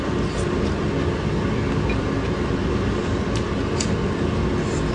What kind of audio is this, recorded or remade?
recorded